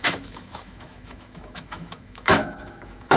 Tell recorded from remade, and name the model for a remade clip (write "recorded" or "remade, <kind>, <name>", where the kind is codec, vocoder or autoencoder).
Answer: remade, autoencoder, DAC-VAE